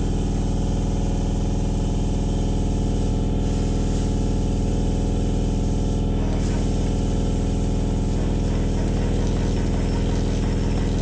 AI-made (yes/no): no